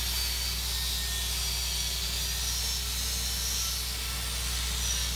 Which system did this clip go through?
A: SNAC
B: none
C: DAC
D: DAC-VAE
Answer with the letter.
B